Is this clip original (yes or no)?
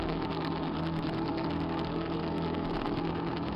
no